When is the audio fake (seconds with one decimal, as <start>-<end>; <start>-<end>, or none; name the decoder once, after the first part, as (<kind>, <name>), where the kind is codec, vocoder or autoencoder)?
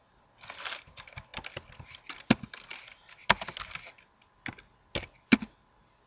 none